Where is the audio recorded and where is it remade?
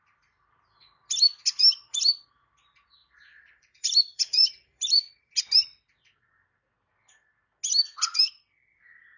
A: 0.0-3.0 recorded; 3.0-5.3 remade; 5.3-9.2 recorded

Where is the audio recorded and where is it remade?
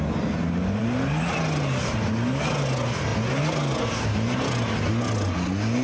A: 0.0-5.8 recorded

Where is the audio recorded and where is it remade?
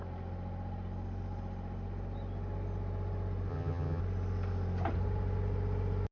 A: 0.0-3.5 recorded; 3.5-4.0 remade; 4.0-6.1 recorded